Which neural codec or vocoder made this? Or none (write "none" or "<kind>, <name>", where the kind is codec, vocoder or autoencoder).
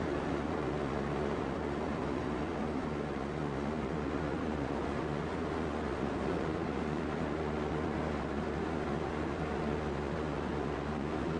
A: vocoder, Vocos